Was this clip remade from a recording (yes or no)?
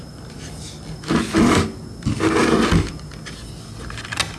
no